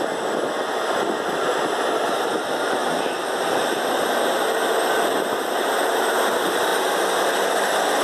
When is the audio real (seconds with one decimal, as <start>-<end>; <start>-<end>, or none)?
0.0-8.0